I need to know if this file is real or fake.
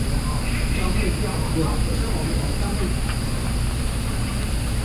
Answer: fake